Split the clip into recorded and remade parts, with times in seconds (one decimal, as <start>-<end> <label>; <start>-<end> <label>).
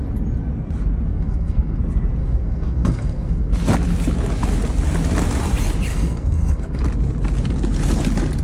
0.0-1.1 recorded; 1.1-1.8 remade; 1.8-2.2 recorded; 2.2-3.5 remade; 3.5-5.9 recorded; 5.9-6.8 remade; 6.8-8.4 recorded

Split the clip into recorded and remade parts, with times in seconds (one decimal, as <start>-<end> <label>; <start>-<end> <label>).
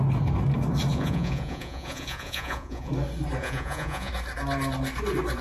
0.0-0.9 recorded; 0.9-2.9 remade; 2.9-3.4 recorded; 3.4-4.1 remade; 4.1-5.4 recorded